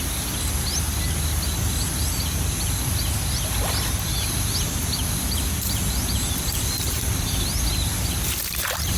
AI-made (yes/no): no